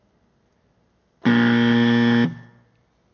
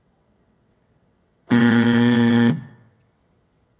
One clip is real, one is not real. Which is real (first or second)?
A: first